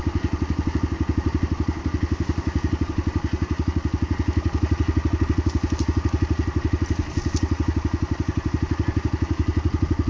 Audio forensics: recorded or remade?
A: recorded